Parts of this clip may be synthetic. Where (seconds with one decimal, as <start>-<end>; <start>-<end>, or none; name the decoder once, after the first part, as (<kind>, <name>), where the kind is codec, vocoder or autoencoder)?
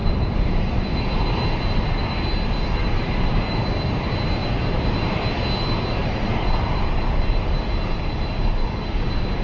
0.0-1.2 (vocoder, BigVGAN v2); 2.8-3.4; 4.4-4.9; 6.0-7.1